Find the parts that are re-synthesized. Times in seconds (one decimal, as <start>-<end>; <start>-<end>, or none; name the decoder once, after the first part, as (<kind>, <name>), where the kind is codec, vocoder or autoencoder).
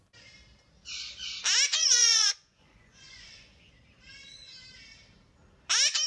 1.7-3.7 (vocoder, Vocos)